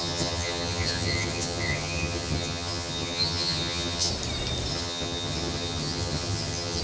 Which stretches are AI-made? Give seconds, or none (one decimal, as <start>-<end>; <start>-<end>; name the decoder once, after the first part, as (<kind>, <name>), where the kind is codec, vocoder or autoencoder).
0.0-4.1 (vocoder, HiFi-GAN); 4.7-6.8